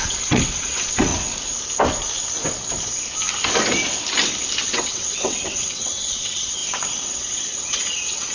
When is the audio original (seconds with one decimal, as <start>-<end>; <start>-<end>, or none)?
1.1-4.7